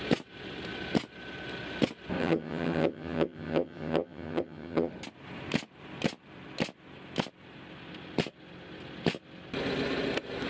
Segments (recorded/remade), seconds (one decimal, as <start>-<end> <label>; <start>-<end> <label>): 0.0-2.2 recorded; 2.2-4.9 remade; 4.9-10.5 recorded

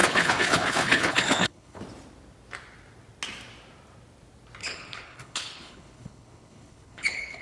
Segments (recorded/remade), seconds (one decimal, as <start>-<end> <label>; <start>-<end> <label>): 0.0-1.8 remade; 1.8-4.6 recorded; 4.6-7.4 remade